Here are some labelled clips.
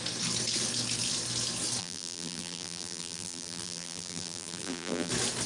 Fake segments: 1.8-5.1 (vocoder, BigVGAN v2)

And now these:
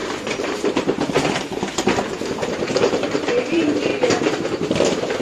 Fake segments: 0.0-3.9 (vocoder, BigVGAN v2); 4.7-5.2

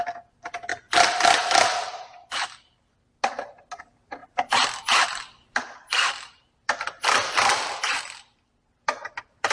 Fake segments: 0.0-0.7 (vocoder, BigVGAN v2); 3.8-9.5

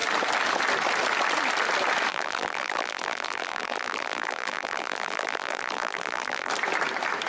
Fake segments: 2.1-6.5 (vocoder, BigVGAN v2)

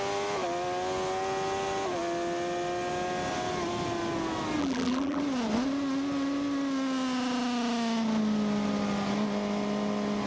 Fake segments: 4.6-5.2 (vocoder, BigVGAN v2)

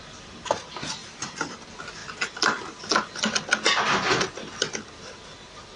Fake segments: 1.0-1.6 (vocoder, BigVGAN v2)